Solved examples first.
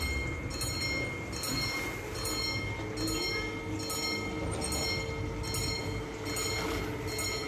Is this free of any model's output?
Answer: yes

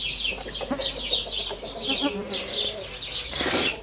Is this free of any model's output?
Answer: yes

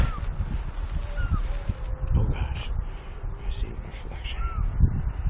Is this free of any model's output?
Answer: yes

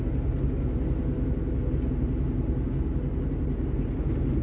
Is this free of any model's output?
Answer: yes